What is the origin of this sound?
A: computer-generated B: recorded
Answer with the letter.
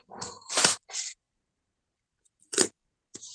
A